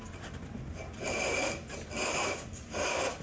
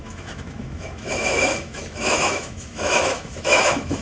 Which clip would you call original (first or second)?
first